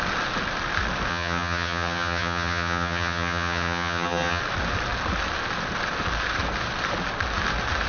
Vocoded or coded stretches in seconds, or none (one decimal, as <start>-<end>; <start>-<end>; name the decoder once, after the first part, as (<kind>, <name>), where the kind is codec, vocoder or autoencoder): 1.1-4.4 (vocoder, HiFi-GAN)